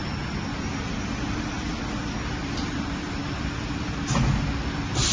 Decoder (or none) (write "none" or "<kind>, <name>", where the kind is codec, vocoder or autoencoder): none